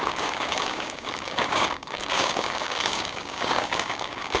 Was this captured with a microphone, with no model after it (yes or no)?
no